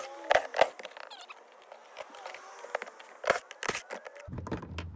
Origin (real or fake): real